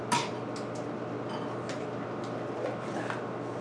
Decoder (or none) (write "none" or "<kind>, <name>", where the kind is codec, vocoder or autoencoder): none